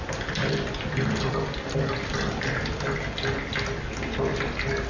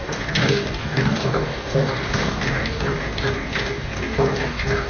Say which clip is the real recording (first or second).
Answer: first